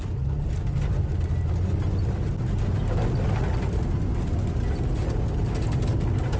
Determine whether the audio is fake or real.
real